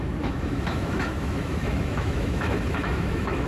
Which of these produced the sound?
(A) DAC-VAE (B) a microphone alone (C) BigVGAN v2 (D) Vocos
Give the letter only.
A